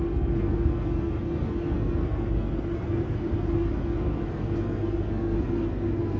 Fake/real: fake